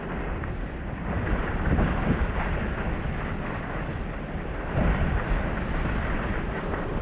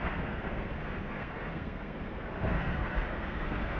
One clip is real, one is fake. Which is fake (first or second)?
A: second